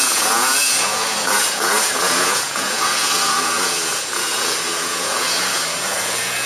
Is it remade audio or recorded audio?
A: remade